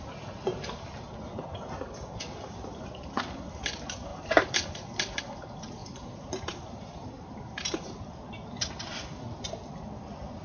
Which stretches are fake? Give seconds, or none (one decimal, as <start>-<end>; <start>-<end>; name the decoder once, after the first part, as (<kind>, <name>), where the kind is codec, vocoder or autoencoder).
4.1-5.2 (vocoder, BigVGAN v2); 5.8-8.0